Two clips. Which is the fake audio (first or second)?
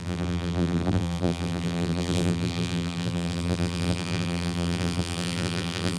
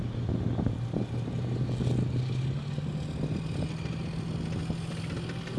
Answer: first